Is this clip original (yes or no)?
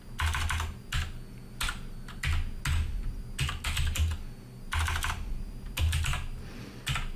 yes